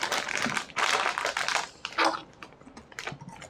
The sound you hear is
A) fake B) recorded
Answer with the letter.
B